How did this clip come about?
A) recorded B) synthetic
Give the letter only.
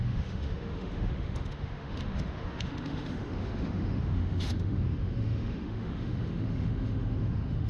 B